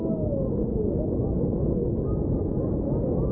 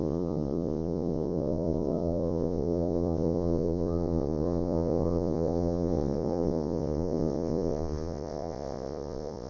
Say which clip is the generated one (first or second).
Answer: second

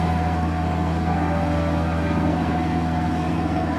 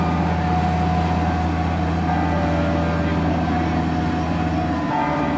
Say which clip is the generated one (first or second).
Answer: first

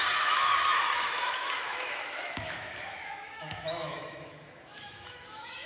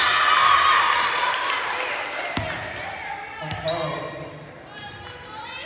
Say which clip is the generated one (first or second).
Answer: first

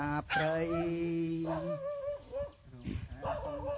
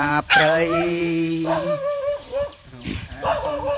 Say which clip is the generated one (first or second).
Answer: second